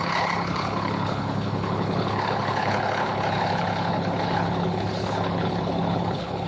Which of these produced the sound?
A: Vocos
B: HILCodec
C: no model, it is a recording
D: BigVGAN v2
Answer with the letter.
B